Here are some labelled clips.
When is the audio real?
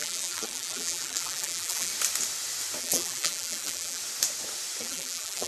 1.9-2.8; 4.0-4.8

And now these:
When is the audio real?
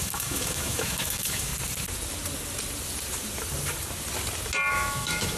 1.5-4.7